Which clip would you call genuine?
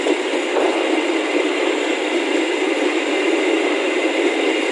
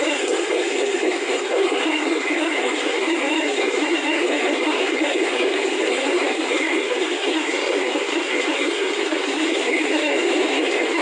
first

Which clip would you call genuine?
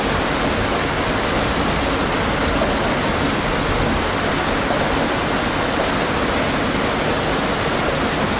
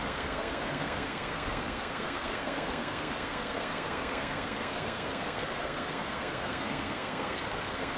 first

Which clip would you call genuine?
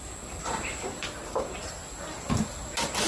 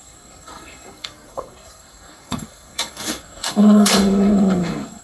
first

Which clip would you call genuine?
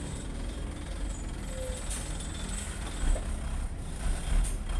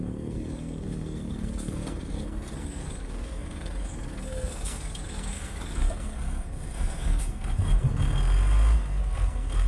first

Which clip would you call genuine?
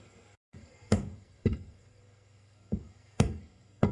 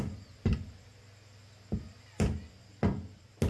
second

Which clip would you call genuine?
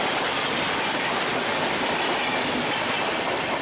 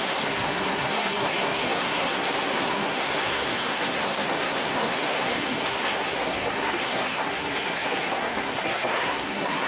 first